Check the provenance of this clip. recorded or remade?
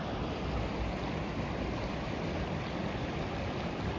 recorded